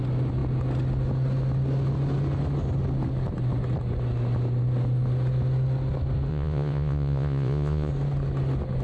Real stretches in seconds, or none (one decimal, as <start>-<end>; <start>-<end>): 0.0-6.3; 7.9-8.8